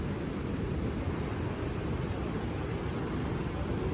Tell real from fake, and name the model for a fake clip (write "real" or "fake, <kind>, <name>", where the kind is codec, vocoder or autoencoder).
real